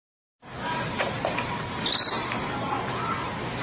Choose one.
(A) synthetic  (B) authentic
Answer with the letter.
B